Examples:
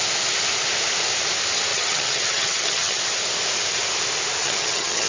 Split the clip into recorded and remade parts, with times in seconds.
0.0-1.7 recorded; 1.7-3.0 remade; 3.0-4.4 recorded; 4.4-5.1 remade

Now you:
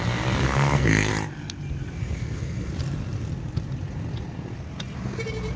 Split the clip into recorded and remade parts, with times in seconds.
0.0-0.4 recorded; 0.4-1.1 remade; 1.1-2.0 recorded; 2.0-2.7 remade; 2.7-5.6 recorded

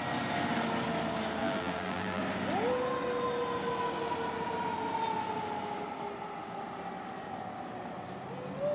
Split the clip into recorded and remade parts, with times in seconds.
0.0-1.4 recorded; 1.4-2.2 remade; 2.2-8.7 recorded

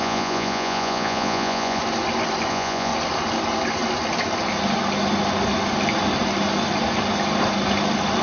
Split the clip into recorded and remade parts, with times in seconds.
0.0-1.8 remade; 1.8-2.5 recorded; 2.5-2.9 remade; 2.9-8.2 recorded

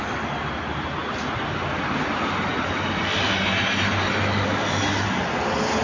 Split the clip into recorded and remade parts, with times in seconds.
0.0-5.8 recorded

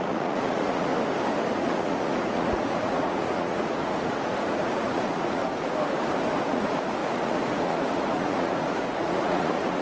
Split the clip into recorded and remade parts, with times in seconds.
0.0-0.9 remade; 0.9-1.5 recorded; 1.5-5.4 remade; 5.4-6.4 recorded; 6.4-9.8 remade

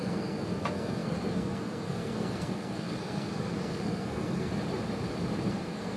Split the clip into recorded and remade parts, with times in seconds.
0.0-4.5 remade; 4.5-5.5 recorded; 5.5-6.0 remade